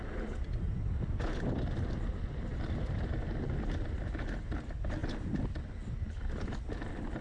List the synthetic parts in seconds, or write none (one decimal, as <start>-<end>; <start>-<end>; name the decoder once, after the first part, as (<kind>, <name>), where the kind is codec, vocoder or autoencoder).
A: none